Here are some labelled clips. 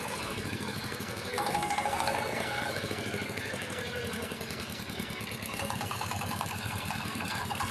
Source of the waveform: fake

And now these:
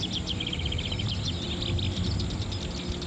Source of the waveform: real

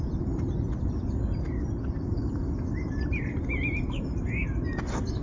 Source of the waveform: real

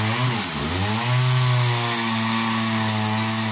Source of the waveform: real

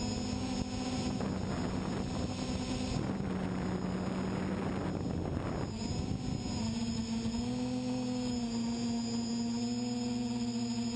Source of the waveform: real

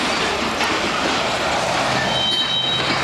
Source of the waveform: real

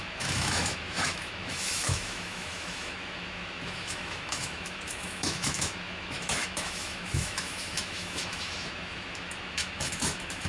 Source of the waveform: fake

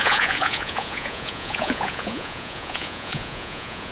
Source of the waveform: fake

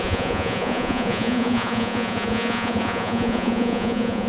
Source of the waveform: fake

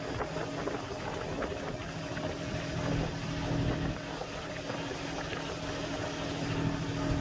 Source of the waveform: real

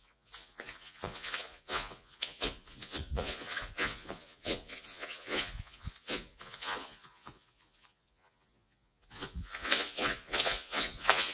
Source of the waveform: fake